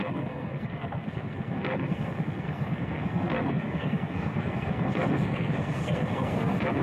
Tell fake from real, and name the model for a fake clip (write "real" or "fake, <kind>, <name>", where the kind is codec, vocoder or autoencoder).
fake, codec, SNAC